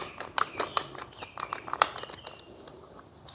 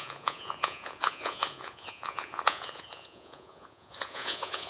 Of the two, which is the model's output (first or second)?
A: second